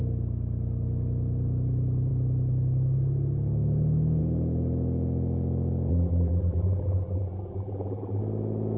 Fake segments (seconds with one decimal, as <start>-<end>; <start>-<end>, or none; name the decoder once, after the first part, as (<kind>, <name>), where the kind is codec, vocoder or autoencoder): 5.9-8.2 (vocoder, BigVGAN v2)